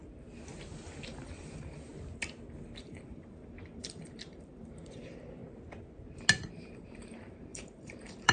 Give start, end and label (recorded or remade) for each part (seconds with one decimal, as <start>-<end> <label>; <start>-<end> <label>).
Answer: 0.0-1.1 recorded; 1.1-1.9 remade; 1.9-2.8 recorded; 2.8-5.4 remade; 5.4-6.5 recorded; 6.5-8.3 remade